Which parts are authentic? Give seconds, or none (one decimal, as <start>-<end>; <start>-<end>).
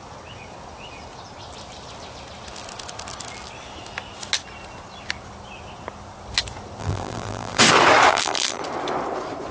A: 0.0-6.8; 7.6-8.1; 8.6-9.5